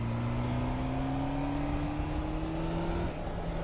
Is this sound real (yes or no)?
yes